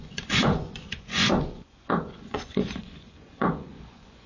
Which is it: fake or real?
fake